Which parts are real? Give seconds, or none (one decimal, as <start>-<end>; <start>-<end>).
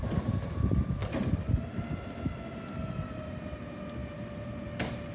0.0-5.1